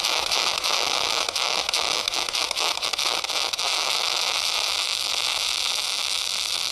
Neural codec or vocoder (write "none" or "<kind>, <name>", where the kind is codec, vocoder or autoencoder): autoencoder, DAC-VAE